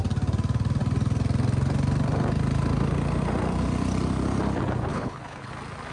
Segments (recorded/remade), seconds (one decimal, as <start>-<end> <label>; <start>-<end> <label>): 0.0-4.9 recorded; 4.9-5.5 remade; 5.5-5.9 recorded